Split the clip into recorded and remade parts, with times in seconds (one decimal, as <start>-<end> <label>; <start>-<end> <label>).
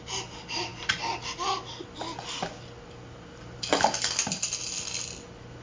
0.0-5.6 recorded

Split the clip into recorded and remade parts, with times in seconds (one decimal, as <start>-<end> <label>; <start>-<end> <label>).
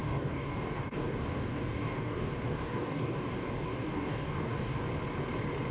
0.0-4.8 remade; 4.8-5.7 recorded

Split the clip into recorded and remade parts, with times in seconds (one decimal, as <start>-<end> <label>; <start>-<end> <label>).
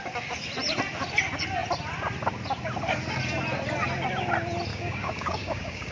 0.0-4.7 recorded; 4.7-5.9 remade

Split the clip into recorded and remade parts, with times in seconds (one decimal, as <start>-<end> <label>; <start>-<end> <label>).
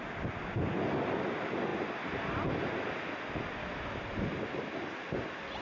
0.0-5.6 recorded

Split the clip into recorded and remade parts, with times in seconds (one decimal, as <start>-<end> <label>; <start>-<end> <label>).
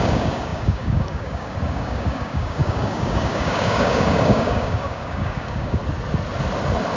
0.0-5.8 remade; 5.8-7.0 recorded